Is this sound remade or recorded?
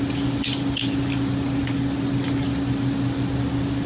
recorded